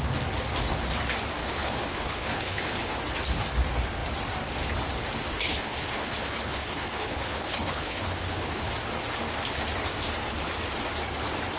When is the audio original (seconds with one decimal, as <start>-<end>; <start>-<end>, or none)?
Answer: 0.0-1.4; 2.9-5.3; 8.7-11.6